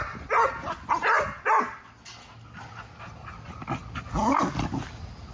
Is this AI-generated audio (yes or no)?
no